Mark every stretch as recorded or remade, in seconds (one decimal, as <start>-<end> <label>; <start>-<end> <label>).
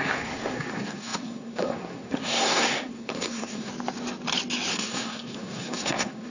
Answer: 0.0-3.7 remade; 3.7-4.7 recorded; 4.7-6.3 remade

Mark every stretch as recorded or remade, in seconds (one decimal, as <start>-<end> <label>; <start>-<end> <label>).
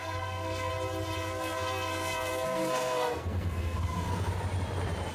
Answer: 0.0-0.7 remade; 0.7-1.2 recorded; 1.2-4.3 remade; 4.3-5.1 recorded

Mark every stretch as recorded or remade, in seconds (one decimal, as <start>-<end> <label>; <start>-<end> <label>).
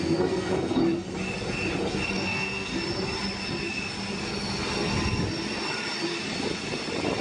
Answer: 0.0-0.8 remade; 0.8-2.1 recorded; 2.1-2.7 remade; 2.7-7.2 recorded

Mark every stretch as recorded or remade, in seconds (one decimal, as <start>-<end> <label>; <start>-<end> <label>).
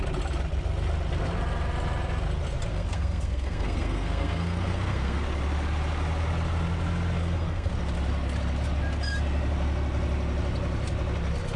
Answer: 0.0-2.7 recorded; 2.7-5.2 remade; 5.2-7.2 recorded; 7.2-7.7 remade; 7.7-11.6 recorded